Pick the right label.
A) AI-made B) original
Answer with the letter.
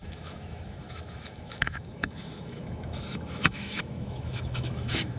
A